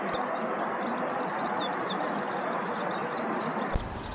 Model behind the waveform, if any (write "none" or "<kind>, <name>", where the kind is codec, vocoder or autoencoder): none